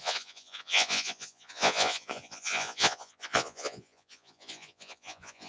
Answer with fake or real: fake